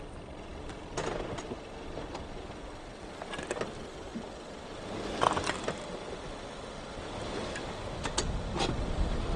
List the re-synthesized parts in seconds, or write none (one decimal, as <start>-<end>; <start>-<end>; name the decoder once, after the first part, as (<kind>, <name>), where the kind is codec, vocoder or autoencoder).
none